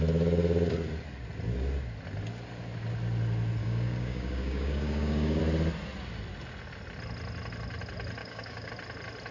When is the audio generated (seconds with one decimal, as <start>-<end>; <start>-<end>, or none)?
3.6-5.4; 8.2-8.7